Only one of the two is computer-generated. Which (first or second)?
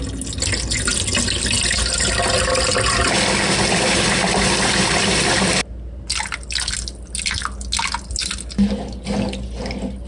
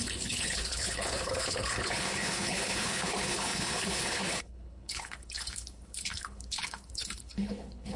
second